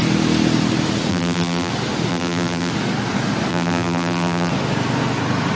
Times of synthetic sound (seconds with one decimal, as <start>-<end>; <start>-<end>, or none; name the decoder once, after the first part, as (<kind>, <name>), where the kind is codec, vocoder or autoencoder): 1.1-1.7 (vocoder, BigVGAN v2); 2.1-2.7; 3.5-4.5